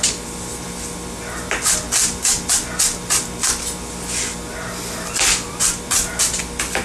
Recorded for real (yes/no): yes